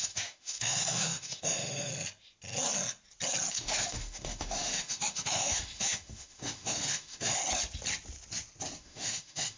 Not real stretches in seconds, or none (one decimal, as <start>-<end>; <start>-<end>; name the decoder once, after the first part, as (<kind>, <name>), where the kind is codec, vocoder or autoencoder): 0.0-1.9 (autoencoder, DAC-VAE); 3.5-7.4; 8.8-9.6